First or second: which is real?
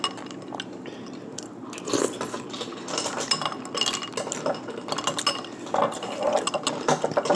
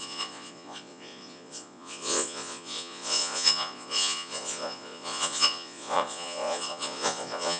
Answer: first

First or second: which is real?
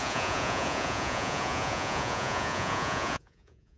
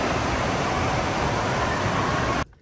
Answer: second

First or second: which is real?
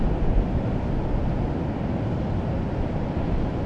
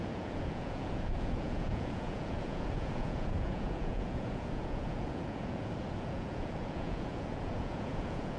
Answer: first